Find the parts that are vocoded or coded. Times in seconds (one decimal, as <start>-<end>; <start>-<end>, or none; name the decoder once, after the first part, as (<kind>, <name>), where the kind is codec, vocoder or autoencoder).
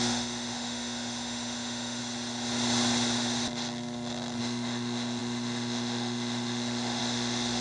0.0-2.0 (autoencoder, DAC-VAE); 4.4-7.6